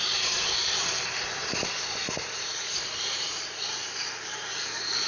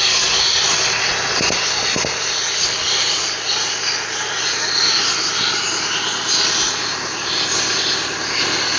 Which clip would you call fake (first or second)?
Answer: first